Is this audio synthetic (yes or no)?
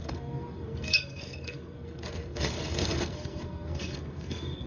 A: yes